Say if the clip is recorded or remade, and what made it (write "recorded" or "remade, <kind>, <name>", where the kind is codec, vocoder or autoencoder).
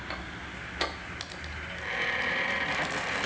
recorded